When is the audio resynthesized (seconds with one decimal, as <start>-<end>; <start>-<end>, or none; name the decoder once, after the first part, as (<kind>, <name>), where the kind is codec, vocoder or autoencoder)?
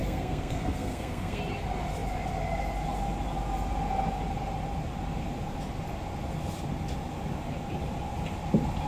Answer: 0.0-1.4 (codec, SNAC)